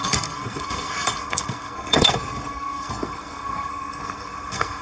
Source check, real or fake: fake